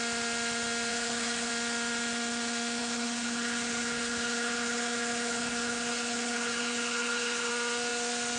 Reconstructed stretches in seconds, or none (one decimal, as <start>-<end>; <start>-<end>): 0.9-1.5; 2.8-7.5

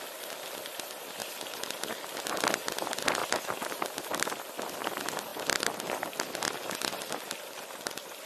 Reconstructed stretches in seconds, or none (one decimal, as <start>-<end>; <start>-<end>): none

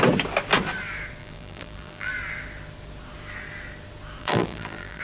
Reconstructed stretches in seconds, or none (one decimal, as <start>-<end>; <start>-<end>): 1.2-2.1; 4.2-5.0